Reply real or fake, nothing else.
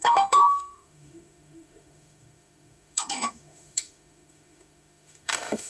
fake